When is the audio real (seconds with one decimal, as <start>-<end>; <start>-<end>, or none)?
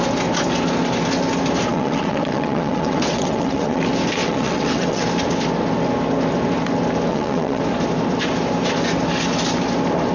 0.0-1.7; 3.8-4.2; 5.0-7.1; 7.6-10.1